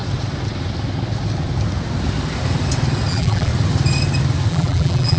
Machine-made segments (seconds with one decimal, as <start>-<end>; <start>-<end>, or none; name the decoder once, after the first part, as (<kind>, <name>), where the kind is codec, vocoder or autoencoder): 3.1-3.5 (vocoder, BigVGAN v2); 4.5-5.2

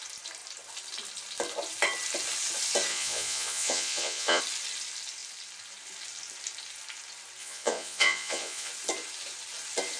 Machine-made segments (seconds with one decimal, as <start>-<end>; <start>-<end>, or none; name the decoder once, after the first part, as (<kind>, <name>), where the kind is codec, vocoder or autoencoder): 2.9-4.4 (vocoder, Vocos); 7.4-8.7

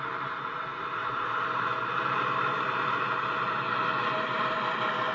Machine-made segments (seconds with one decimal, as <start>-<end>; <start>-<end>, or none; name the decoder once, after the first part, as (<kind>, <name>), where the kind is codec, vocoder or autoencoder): 0.0-5.1 (vocoder, BigVGAN v2)